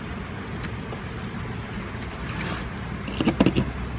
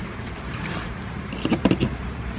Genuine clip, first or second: first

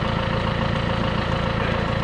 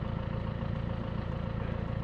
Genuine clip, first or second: first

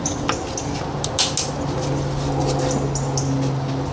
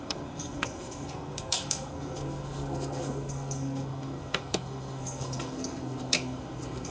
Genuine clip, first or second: first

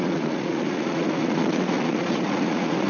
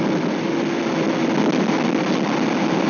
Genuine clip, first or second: second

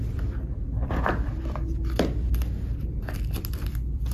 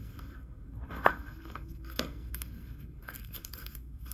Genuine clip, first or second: first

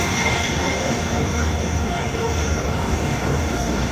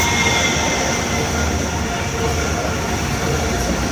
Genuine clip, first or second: second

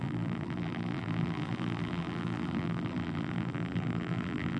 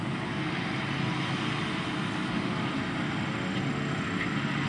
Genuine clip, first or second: second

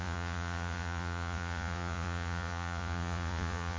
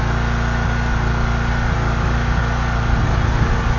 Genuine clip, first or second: second